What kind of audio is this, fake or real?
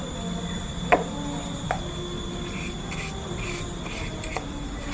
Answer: real